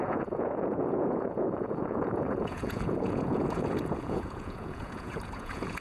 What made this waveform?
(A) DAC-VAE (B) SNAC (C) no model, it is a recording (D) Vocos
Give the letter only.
D